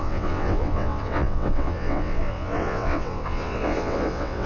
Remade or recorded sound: remade